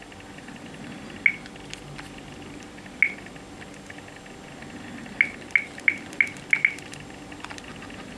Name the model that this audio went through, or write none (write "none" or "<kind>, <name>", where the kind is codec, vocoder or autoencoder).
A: none